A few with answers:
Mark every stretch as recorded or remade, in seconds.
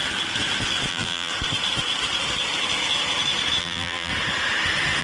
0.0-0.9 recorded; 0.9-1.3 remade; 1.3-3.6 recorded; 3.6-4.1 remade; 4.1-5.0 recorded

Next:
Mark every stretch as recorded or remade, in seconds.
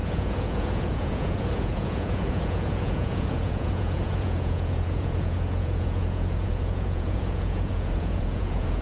0.0-8.8 remade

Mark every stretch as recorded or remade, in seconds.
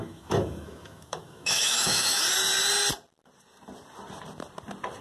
0.0-2.2 remade; 2.2-5.0 recorded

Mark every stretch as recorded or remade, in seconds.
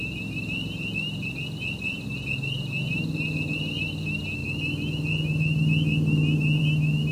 0.0-7.1 recorded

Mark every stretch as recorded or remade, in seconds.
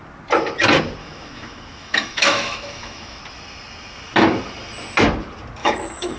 0.0-1.0 recorded; 1.0-3.2 remade; 3.2-5.6 recorded; 5.6-6.2 remade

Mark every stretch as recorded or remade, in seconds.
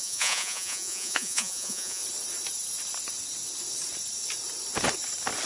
0.0-2.0 remade; 2.0-5.5 recorded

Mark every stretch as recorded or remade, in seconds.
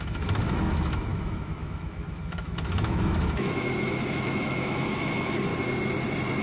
0.0-5.5 remade; 5.5-6.4 recorded